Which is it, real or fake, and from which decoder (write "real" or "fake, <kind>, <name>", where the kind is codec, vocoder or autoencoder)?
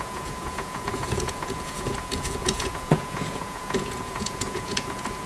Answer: fake, vocoder, Vocos